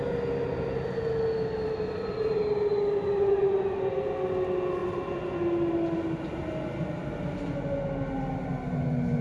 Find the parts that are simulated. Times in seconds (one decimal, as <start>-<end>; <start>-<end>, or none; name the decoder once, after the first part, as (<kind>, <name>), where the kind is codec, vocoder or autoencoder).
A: none